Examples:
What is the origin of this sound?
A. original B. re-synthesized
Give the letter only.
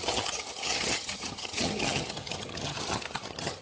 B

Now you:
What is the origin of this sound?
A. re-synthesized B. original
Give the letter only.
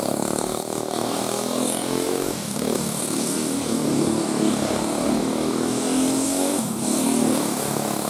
A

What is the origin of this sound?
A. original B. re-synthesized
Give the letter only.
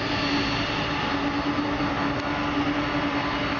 A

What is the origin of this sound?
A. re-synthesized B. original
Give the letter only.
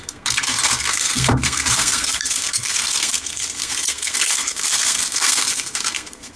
A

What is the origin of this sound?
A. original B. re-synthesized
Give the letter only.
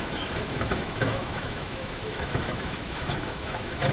B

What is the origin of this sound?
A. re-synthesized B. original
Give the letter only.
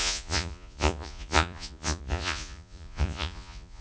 A